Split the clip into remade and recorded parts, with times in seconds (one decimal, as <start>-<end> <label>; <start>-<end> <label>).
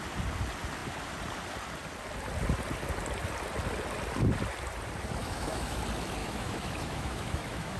0.0-5.2 recorded; 5.2-5.8 remade; 5.8-6.2 recorded; 6.2-7.8 remade